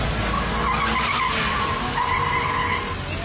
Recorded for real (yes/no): yes